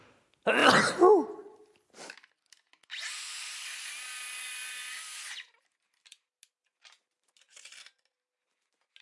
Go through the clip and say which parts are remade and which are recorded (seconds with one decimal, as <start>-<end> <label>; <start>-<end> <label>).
0.0-9.0 recorded